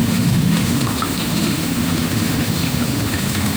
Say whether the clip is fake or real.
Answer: fake